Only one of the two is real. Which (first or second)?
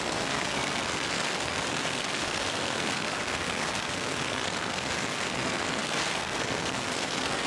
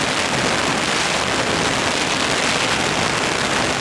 second